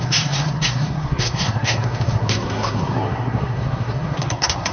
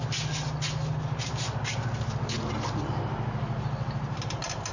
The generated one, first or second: first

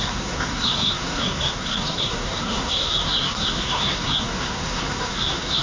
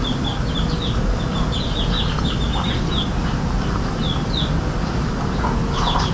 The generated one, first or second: first